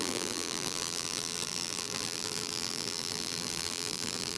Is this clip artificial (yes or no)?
yes